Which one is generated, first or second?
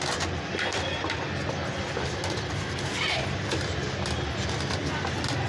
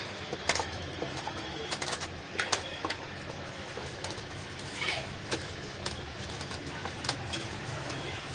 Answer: second